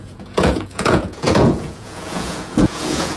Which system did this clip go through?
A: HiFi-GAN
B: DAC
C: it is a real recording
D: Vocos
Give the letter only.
D